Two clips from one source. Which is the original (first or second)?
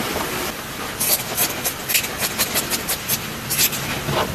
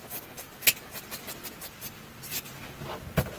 second